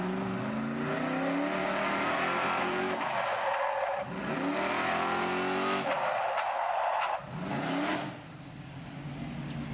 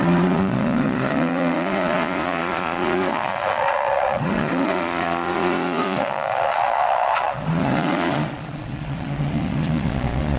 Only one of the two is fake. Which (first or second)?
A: second